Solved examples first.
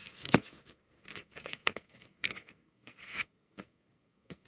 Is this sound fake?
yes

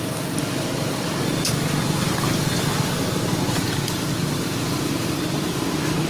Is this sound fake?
no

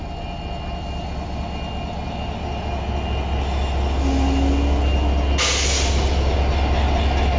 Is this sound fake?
no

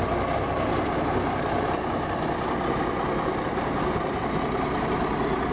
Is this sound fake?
no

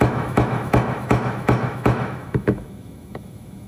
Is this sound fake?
yes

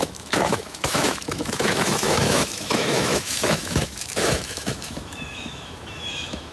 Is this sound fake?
yes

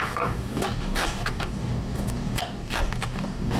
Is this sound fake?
yes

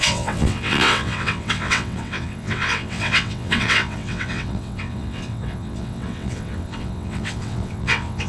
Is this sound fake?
yes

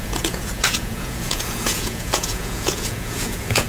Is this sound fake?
yes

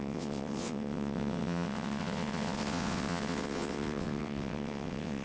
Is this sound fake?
yes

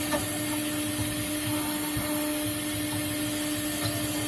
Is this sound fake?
no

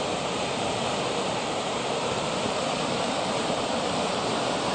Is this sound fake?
yes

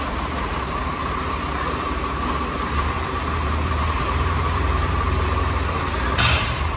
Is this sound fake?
yes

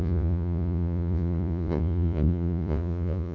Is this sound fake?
yes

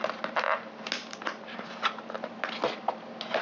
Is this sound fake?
no